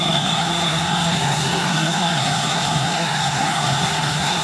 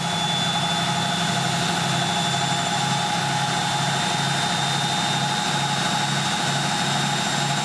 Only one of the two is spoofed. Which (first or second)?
first